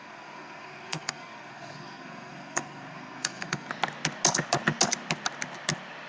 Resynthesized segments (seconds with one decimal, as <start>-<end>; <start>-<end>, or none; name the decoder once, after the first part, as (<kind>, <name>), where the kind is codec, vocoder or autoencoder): 0.0-3.7 (codec, SNAC)